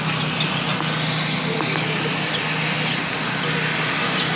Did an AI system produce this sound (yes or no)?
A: no